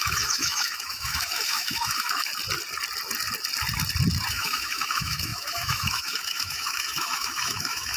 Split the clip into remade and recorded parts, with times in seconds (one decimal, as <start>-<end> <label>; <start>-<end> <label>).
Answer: 0.0-2.3 remade; 2.3-4.3 recorded; 4.3-8.0 remade